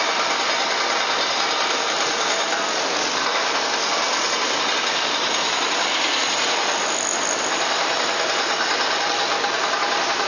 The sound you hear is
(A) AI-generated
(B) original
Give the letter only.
B